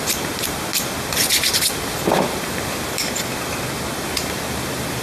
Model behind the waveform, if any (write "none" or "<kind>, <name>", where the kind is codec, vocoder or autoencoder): vocoder, BigVGAN v2